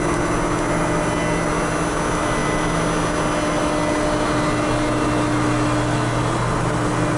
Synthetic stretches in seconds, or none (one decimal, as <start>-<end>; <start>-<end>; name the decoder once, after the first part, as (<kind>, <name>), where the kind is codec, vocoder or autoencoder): none

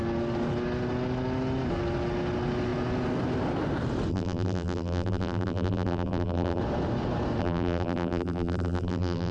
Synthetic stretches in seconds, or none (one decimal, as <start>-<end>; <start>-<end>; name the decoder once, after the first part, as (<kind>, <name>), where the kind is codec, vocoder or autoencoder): 4.1-6.6 (vocoder, BigVGAN v2); 7.4-9.3

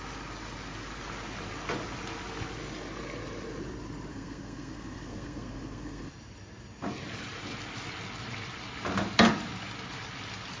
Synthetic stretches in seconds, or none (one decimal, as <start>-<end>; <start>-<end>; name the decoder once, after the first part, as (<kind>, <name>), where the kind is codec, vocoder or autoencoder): 4.1-6.1 (codec, SNAC)

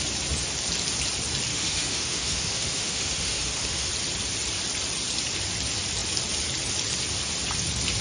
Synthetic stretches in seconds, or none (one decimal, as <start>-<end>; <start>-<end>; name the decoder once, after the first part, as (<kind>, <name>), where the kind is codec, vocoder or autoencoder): 1.5-3.9 (autoencoder, DAC-VAE)

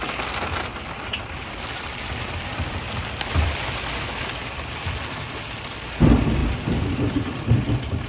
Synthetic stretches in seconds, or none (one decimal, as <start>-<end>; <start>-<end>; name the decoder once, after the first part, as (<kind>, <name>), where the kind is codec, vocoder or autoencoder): 1.1-4.5 (vocoder, BigVGAN v2); 6.4-6.9